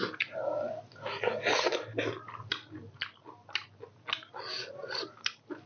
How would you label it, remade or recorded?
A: recorded